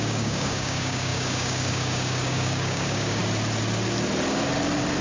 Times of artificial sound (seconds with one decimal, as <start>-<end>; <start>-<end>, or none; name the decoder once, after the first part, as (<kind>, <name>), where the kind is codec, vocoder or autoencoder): 0.0-3.2 (codec, DAC)